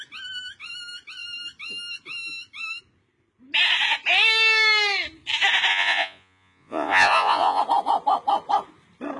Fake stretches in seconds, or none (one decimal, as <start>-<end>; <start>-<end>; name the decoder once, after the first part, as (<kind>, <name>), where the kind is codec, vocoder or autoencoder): 5.7-7.6 (vocoder, Vocos)